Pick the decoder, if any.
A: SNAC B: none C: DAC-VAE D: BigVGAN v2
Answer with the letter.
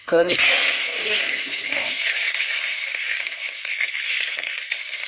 A